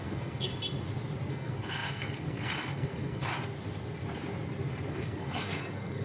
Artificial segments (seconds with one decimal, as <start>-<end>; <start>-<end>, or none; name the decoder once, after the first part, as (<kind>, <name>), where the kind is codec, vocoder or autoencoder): 0.0-0.5 (codec, SNAC); 1.3-3.3; 4.9-6.0